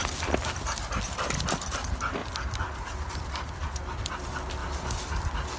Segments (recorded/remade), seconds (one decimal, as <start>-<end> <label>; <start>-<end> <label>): 0.0-5.6 recorded